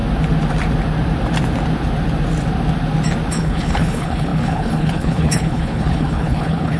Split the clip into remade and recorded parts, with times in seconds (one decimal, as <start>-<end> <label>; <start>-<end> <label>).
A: 0.0-3.3 recorded; 3.3-6.8 remade